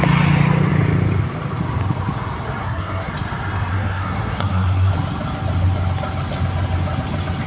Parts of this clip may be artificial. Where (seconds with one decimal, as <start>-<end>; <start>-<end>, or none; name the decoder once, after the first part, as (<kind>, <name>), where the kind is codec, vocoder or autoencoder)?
2.6-3.1 (codec, SNAC); 3.7-4.9

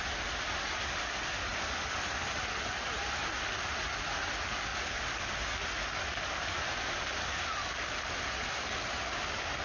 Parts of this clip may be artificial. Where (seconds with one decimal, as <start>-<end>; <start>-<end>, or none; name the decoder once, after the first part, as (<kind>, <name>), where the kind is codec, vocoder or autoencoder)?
none

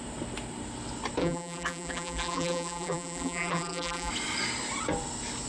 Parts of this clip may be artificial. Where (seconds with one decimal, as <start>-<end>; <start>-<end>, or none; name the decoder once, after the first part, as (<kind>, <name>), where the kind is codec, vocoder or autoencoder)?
1.2-4.1 (vocoder, BigVGAN v2)

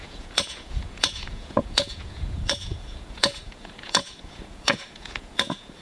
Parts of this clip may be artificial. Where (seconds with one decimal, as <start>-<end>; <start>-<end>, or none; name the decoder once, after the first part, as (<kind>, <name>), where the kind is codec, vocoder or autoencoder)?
0.0-5.8 (vocoder, Vocos)

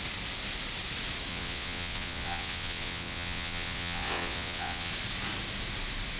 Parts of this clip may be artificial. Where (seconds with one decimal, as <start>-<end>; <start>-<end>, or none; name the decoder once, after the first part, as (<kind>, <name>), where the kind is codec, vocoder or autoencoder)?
1.3-4.9 (vocoder, WaveNeXt)